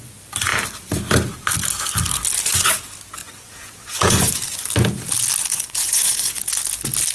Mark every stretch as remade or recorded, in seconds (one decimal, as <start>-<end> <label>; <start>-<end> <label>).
0.0-3.2 recorded; 3.2-4.3 remade; 4.3-5.5 recorded; 5.5-6.4 remade; 6.4-7.1 recorded